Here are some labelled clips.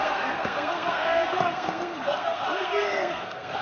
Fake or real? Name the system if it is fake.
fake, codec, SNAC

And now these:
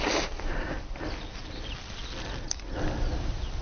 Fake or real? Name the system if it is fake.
real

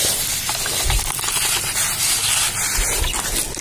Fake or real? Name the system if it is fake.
real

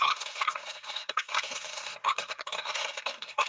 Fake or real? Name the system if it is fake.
fake, codec, SNAC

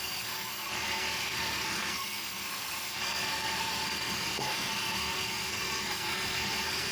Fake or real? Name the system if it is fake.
fake, codec, SNAC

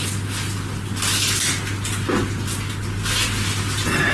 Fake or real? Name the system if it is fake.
real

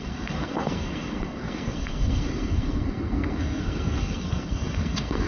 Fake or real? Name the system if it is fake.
fake, codec, SNAC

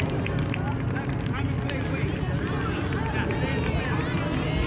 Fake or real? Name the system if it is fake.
real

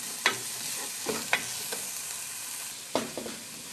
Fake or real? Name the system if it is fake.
real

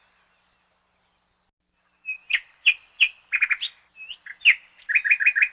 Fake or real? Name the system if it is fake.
real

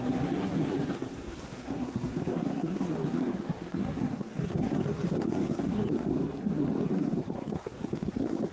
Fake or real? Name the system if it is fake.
fake, codec, SNAC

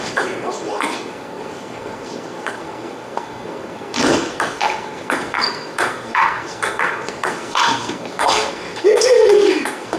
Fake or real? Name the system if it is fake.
fake, codec, SNAC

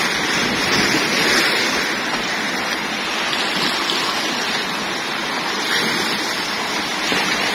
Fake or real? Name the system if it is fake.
real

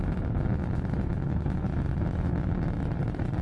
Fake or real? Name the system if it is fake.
real